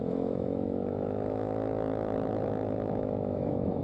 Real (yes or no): no